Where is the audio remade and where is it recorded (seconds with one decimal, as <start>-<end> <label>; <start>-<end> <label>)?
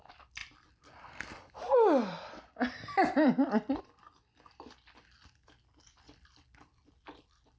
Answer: 0.0-7.6 recorded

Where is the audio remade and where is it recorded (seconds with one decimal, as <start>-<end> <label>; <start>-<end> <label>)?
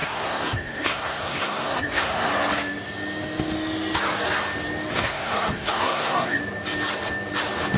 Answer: 0.0-2.3 remade; 2.3-4.9 recorded; 4.9-6.4 remade; 6.4-7.8 recorded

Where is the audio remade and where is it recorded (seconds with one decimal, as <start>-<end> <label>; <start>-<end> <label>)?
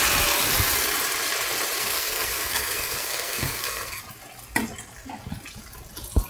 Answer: 0.0-1.8 recorded; 1.8-4.0 remade; 4.0-6.3 recorded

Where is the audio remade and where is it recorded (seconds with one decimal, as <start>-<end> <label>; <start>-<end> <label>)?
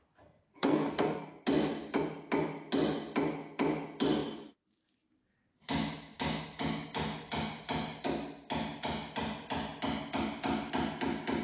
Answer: 0.0-0.5 recorded; 0.5-1.4 remade; 1.4-11.4 recorded